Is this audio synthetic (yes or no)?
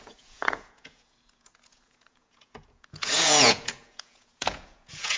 yes